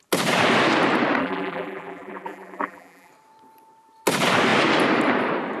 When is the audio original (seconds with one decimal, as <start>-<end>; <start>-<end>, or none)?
0.0-1.2; 3.1-5.6